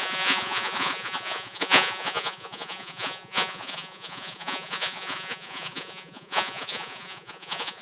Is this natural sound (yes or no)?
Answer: no